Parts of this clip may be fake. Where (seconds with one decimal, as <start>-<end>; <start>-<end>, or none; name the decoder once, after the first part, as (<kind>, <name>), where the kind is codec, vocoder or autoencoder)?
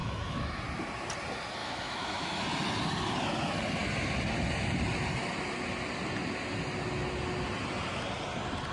0.0-0.6 (autoencoder, DAC-VAE); 1.6-2.4